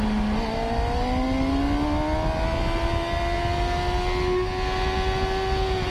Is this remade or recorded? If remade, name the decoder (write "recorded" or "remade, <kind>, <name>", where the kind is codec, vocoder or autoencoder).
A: recorded